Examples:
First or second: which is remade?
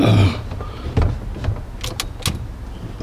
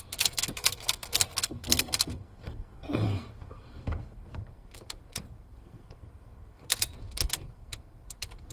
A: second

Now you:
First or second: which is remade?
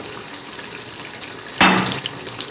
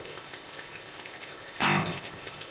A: second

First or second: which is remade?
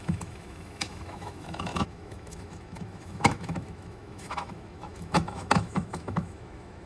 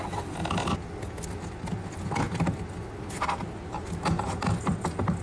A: first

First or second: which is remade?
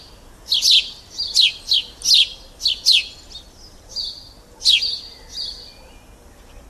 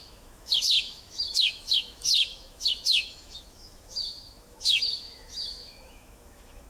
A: second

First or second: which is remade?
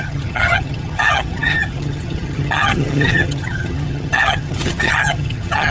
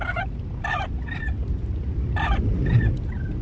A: first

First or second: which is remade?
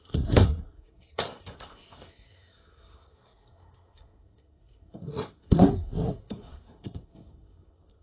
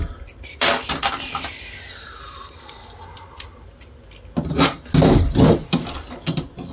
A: first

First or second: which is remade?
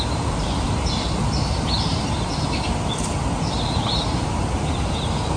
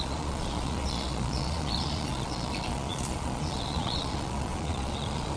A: second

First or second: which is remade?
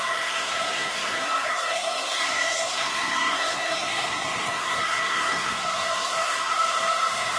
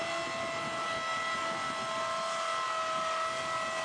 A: first